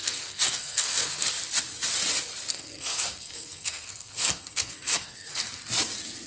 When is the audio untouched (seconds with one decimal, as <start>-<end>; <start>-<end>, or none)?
1.3-2.5; 5.6-6.3